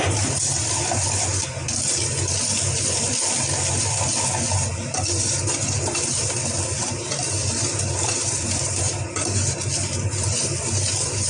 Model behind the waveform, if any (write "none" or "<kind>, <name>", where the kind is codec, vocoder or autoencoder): none